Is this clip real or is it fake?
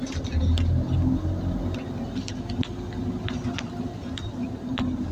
real